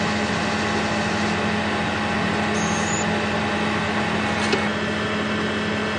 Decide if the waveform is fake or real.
real